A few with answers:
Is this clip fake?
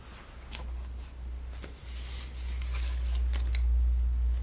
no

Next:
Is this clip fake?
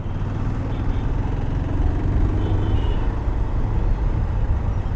no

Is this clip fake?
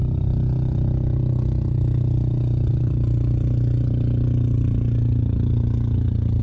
no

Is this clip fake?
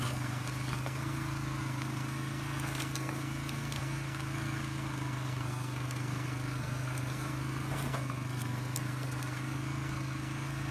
yes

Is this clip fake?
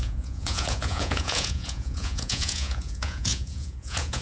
yes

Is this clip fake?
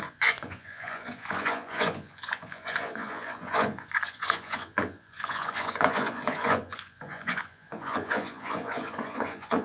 yes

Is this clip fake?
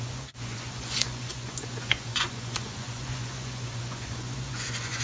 yes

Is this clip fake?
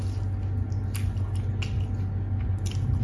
no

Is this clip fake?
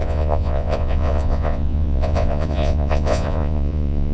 yes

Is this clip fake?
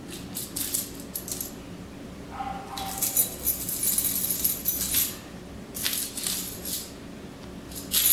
no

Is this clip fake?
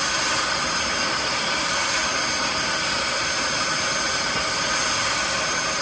no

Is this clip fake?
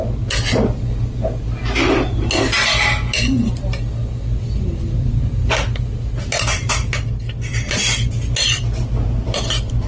no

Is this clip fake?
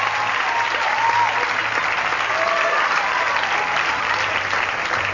no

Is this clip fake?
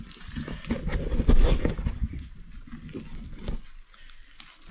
no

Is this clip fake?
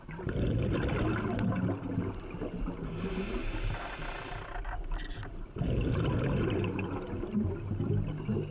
no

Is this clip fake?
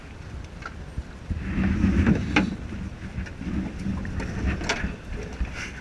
no